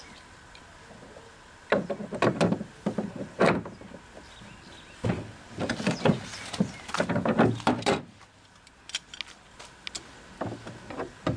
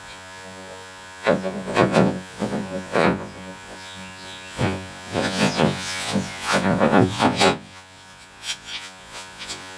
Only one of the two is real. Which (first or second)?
first